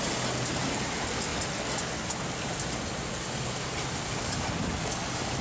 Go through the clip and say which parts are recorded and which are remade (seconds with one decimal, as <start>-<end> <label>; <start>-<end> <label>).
0.0-5.4 recorded